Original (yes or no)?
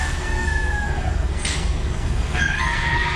no